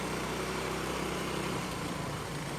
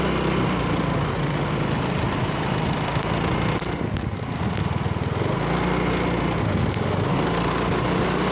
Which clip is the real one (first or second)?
second